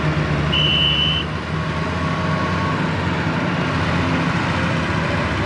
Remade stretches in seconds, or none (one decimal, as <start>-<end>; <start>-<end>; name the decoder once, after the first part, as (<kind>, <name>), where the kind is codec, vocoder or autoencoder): none